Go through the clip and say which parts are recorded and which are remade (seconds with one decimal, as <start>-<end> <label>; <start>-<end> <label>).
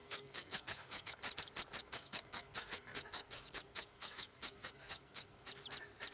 0.0-1.2 remade; 1.2-1.8 recorded; 1.8-5.5 remade; 5.5-6.1 recorded